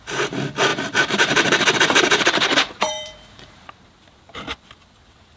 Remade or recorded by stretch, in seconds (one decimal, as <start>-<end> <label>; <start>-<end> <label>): 0.0-0.7 recorded; 0.7-3.9 remade; 3.9-5.4 recorded